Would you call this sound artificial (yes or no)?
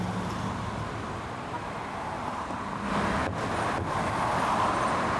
no